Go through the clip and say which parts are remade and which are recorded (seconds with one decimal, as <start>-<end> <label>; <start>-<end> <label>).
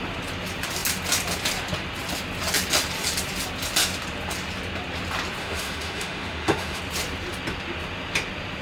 0.0-5.4 recorded; 5.4-6.8 remade; 6.8-8.6 recorded